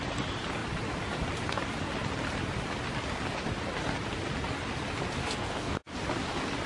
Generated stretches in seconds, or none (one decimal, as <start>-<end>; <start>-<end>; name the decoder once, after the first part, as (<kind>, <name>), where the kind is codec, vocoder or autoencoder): 5.2-5.9 (codec, DAC)

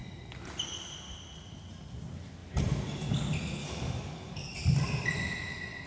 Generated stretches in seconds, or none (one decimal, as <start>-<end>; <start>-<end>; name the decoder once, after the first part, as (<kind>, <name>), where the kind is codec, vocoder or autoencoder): 3.6-4.6 (codec, DAC)

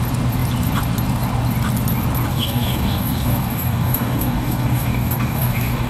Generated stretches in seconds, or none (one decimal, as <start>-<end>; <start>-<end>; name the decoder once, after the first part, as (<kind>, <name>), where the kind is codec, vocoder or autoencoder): 2.3-5.9 (codec, DAC)

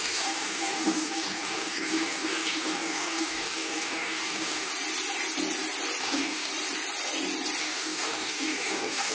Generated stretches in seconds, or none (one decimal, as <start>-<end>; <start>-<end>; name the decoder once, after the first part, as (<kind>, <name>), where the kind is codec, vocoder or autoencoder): 0.0-4.7 (codec, DAC); 6.0-6.5; 7.6-9.1

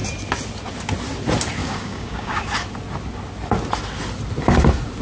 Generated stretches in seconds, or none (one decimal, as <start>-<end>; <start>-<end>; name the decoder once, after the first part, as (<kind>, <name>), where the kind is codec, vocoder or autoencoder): 1.6-2.5 (codec, DAC)